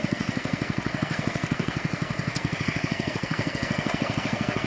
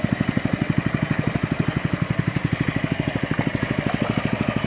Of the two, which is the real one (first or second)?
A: second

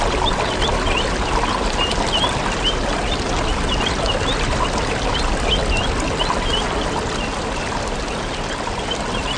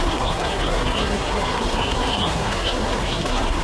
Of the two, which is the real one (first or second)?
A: first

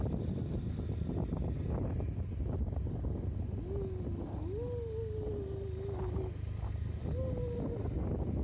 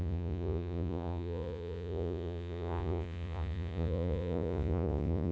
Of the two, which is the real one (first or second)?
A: first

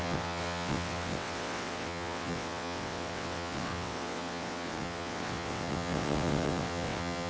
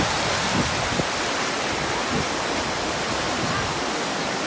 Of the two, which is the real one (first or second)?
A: second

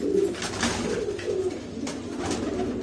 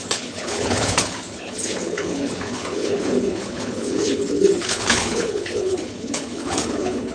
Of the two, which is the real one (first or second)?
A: first